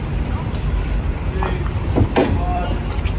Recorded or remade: remade